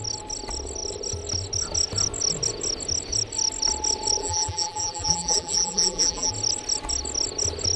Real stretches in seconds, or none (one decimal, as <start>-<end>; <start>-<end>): 0.0-4.2; 6.3-7.8